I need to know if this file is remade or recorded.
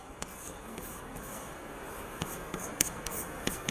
remade